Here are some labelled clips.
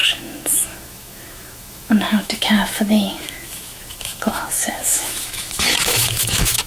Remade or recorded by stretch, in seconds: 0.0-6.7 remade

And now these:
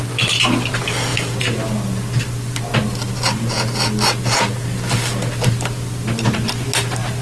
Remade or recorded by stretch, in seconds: 0.0-7.2 recorded